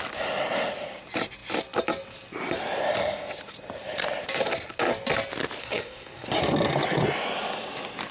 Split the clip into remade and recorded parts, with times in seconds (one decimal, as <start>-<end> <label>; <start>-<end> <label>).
0.0-5.6 recorded; 5.6-6.3 remade; 6.3-8.1 recorded